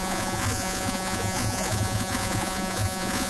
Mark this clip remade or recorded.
remade